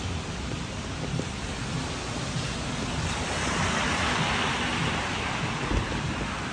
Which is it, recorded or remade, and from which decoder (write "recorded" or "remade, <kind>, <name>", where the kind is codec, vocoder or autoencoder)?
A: recorded